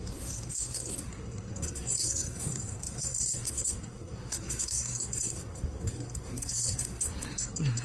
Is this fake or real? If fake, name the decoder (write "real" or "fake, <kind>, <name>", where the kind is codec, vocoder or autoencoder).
fake, codec, SNAC